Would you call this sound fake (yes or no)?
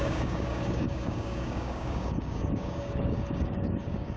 yes